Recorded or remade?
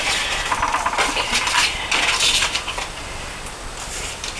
recorded